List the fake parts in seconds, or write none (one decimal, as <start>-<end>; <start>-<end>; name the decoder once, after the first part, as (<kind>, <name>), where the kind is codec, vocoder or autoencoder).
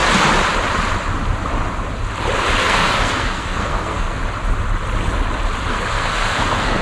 2.6-4.2 (codec, SNAC); 5.7-6.8